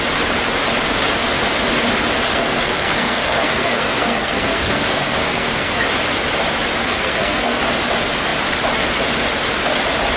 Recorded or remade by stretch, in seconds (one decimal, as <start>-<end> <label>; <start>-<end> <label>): 0.0-2.3 recorded; 2.3-5.8 remade; 5.8-6.8 recorded; 6.8-7.6 remade; 7.6-10.2 recorded